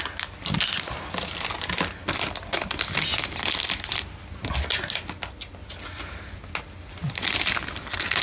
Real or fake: real